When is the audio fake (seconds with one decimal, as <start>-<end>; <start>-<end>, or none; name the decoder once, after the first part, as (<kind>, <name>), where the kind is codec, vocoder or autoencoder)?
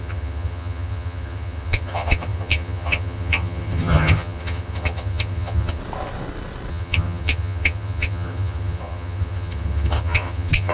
0.0-5.8 (vocoder, HiFi-GAN); 6.7-10.7